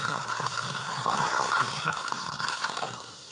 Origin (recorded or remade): remade